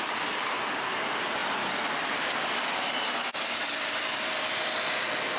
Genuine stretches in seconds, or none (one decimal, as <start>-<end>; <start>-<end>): 0.0-1.4; 4.6-5.4